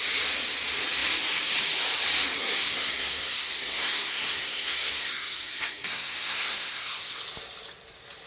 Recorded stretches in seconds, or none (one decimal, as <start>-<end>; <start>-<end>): 0.0-2.4; 7.2-8.3